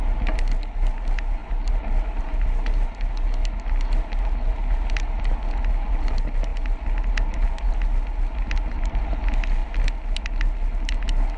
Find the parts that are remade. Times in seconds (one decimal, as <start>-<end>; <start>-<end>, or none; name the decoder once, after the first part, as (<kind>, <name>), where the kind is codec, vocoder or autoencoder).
none